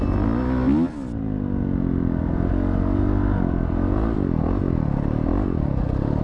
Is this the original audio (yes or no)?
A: yes